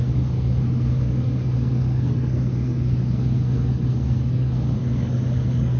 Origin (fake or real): fake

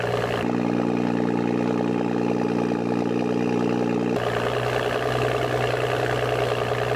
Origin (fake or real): real